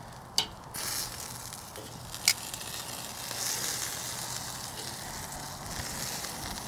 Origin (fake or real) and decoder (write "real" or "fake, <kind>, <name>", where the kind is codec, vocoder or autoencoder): real